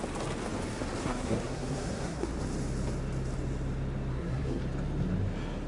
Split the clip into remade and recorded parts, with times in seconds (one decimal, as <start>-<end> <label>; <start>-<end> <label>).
0.0-1.0 recorded; 1.0-2.3 remade; 2.3-4.1 recorded; 4.1-4.6 remade; 4.6-5.7 recorded